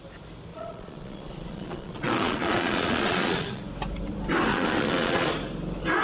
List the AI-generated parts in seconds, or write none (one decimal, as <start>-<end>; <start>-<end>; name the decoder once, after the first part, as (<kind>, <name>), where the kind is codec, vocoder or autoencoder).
0.5-3.6 (vocoder, Vocos); 4.5-5.3